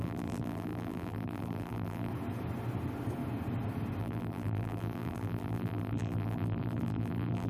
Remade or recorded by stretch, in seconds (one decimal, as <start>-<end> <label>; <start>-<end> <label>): 0.0-2.1 remade; 2.1-4.0 recorded; 4.0-7.5 remade